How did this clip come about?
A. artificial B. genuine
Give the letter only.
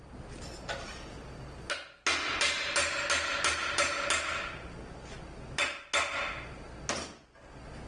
B